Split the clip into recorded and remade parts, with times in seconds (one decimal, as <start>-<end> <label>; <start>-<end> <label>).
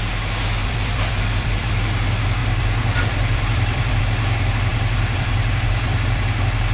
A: 0.0-0.6 recorded; 0.6-1.7 remade; 1.7-2.4 recorded; 2.4-4.0 remade; 4.0-4.7 recorded; 4.7-6.2 remade; 6.2-6.7 recorded